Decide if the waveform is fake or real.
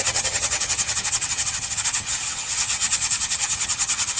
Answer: fake